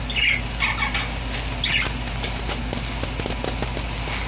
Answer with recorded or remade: recorded